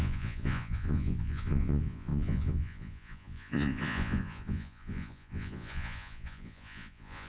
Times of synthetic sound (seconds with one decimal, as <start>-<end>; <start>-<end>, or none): 0.0-7.3